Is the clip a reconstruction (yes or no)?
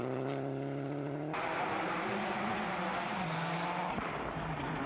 no